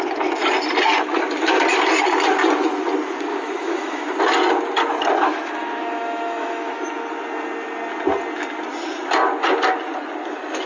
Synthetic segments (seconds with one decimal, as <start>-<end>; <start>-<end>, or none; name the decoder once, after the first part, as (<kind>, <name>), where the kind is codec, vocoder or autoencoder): 3.3-4.1 (autoencoder, DAC-VAE); 5.3-7.0